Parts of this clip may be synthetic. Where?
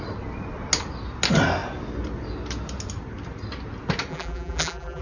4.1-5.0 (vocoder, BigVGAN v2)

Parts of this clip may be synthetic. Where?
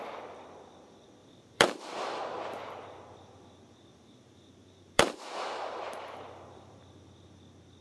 1.2-2.2 (vocoder, BigVGAN v2); 3.9-6.8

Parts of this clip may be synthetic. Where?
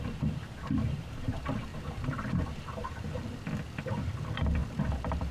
1.7-3.2 (vocoder, BigVGAN v2)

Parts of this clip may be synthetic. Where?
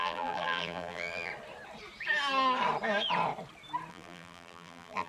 0.0-1.3 (vocoder, BigVGAN v2); 3.9-5.1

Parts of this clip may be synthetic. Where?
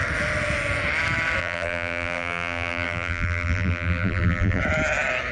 1.4-4.6 (vocoder, BigVGAN v2)